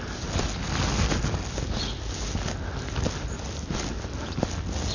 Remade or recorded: recorded